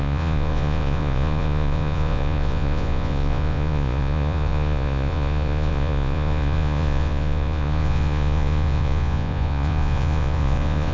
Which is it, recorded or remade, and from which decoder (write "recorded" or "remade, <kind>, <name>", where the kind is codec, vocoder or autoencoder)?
remade, vocoder, Vocos